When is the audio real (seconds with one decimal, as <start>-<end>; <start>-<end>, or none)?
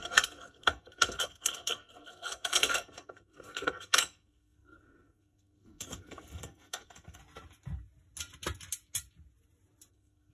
7.2-9.9